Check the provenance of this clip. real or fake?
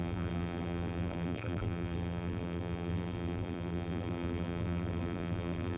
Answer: fake